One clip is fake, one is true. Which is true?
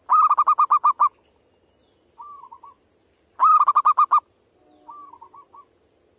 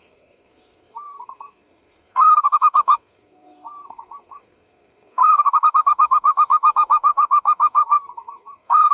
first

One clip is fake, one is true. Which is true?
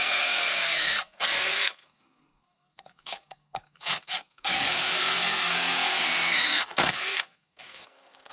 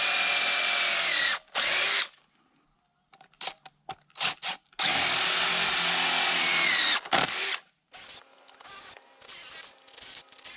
second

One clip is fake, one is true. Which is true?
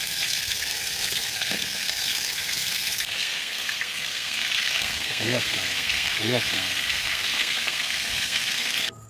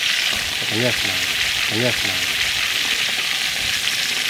second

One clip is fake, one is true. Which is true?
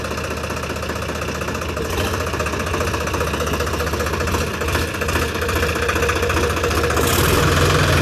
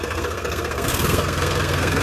first